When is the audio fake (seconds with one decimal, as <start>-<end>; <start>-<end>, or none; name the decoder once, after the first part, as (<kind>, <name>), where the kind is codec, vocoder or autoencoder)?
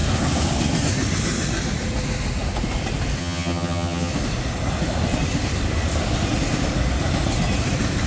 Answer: 3.2-4.1 (vocoder, HiFi-GAN)